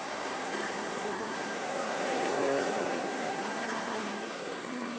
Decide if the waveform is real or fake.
fake